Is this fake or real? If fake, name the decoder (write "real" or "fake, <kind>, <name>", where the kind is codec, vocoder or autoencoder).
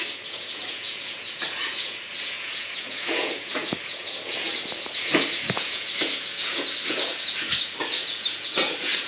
fake, vocoder, Vocos